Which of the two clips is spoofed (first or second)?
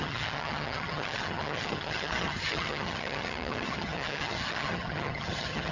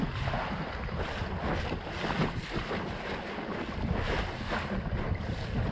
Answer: first